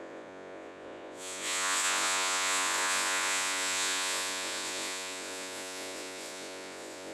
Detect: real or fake fake